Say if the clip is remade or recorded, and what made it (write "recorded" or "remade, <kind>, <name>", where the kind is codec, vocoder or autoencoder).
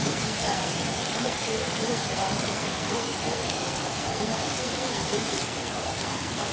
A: remade, codec, SNAC